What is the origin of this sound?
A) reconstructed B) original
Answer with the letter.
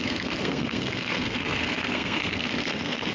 A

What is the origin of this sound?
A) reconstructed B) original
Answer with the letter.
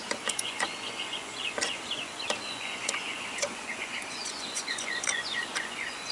A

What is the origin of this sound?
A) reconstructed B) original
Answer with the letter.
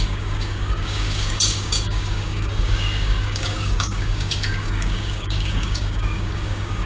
A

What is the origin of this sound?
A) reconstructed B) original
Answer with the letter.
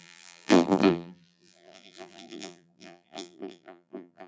A